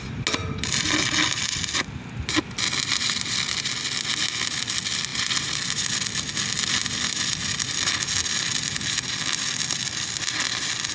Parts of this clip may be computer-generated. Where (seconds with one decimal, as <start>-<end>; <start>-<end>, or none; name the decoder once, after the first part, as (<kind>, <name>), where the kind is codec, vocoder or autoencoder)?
none